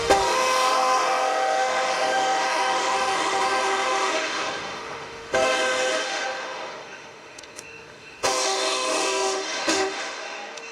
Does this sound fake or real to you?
fake